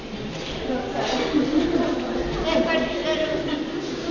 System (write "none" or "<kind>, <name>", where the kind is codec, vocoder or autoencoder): none